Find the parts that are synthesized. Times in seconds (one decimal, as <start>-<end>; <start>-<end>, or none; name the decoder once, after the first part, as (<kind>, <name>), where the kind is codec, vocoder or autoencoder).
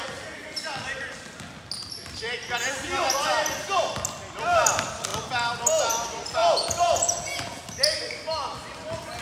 6.4-7.6 (vocoder, Vocos)